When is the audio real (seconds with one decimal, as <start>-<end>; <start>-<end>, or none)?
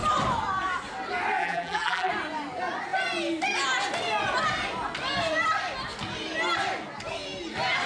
0.0-1.4; 2.1-7.9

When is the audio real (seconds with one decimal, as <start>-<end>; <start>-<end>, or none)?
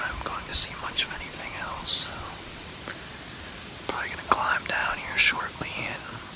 0.0-0.5; 2.7-4.8; 5.4-6.4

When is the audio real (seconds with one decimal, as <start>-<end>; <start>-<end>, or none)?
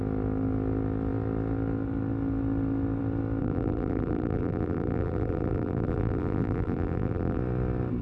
0.0-3.4; 7.4-8.0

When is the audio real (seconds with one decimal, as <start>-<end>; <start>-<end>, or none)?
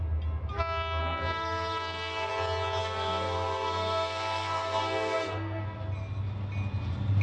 0.0-1.0; 2.3-2.8; 5.6-7.2